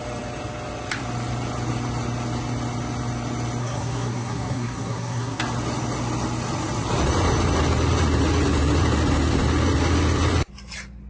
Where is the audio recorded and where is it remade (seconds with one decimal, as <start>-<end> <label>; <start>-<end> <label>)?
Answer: 0.0-3.6 recorded; 3.6-5.4 remade; 5.4-11.1 recorded